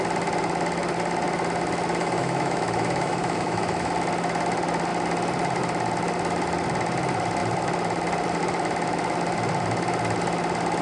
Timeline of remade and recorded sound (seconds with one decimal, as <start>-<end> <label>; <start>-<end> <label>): 0.0-2.0 recorded; 2.0-3.9 remade; 3.9-10.8 recorded